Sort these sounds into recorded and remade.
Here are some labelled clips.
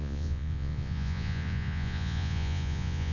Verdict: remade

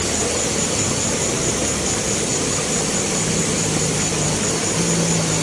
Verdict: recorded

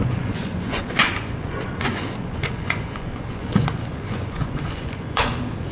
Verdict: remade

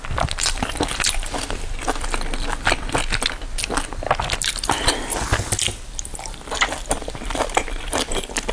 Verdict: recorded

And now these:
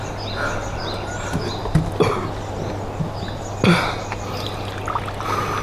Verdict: recorded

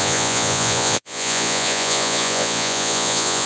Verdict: remade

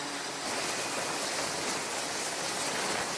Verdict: recorded